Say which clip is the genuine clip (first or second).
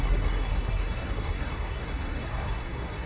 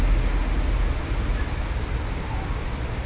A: second